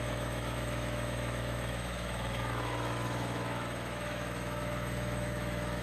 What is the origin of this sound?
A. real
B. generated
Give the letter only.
B